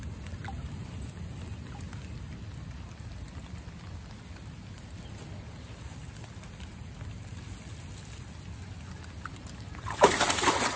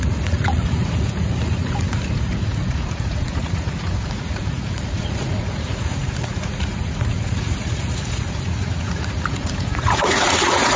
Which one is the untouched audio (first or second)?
first